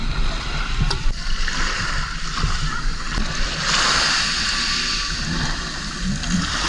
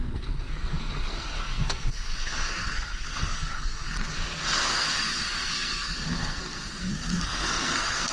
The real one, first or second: first